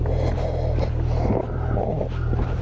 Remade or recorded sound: recorded